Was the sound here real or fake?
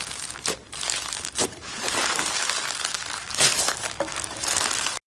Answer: fake